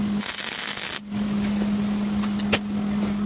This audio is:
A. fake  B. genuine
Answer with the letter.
B